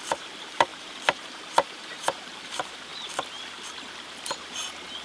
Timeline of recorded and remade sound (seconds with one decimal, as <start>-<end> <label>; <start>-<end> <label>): 0.0-2.9 remade; 2.9-5.0 recorded